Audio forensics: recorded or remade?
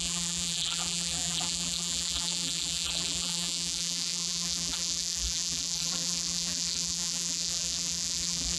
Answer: remade